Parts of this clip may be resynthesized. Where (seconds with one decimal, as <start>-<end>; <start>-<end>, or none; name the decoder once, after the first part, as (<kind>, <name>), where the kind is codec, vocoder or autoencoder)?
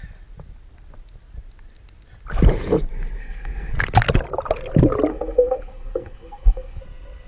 3.2-3.7 (codec, SNAC); 5.1-6.8